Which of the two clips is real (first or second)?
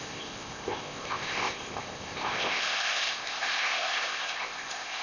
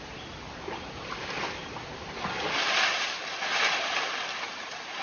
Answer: second